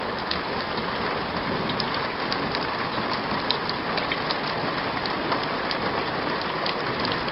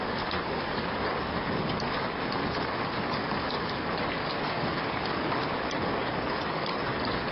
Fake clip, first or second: second